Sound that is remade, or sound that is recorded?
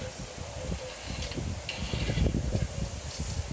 recorded